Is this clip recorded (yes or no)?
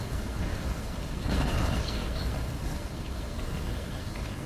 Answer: no